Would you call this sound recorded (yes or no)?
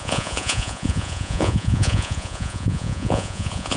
no